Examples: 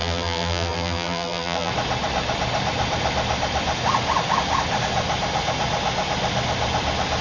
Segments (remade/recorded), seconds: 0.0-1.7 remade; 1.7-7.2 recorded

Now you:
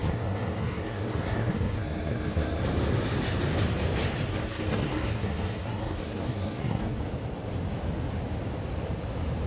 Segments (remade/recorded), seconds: 0.0-2.6 remade; 2.6-4.3 recorded; 4.3-7.0 remade; 7.0-9.5 recorded

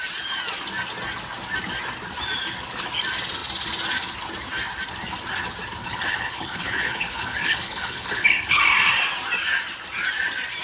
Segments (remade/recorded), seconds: 0.0-5.8 recorded; 5.8-8.6 remade; 8.6-10.6 recorded

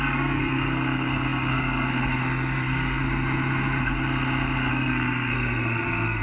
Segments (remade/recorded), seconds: 0.0-3.0 remade; 3.0-4.7 recorded; 4.7-6.2 remade

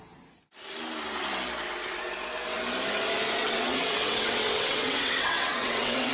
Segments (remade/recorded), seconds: 0.0-3.4 recorded; 3.4-6.1 remade

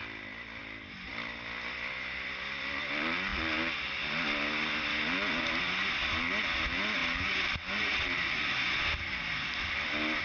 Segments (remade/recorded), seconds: 0.0-10.2 recorded